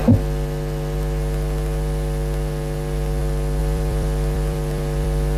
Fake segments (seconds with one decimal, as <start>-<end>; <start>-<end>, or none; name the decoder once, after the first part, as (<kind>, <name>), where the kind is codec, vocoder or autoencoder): 3.6-5.4 (vocoder, BigVGAN v2)